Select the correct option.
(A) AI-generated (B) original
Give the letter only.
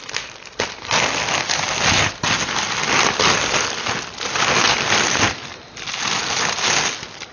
B